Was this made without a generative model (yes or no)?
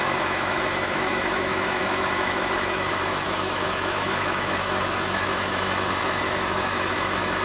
no